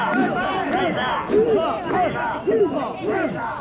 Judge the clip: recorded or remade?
recorded